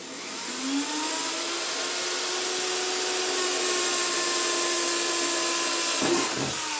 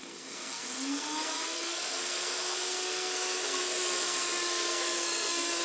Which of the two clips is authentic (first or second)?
first